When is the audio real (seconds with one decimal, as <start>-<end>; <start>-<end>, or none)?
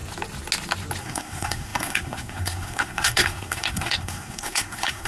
0.0-1.0